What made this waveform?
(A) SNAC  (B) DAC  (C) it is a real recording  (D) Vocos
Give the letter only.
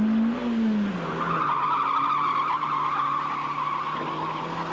C